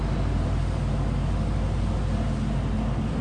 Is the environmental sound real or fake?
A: real